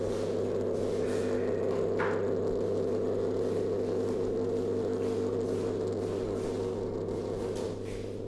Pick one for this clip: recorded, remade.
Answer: recorded